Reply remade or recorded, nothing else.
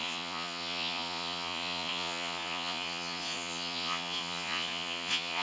remade